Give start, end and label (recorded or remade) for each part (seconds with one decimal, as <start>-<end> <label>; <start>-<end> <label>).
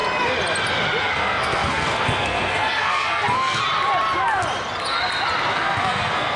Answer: 0.0-1.0 recorded; 1.0-3.6 remade; 3.6-5.5 recorded; 5.5-6.4 remade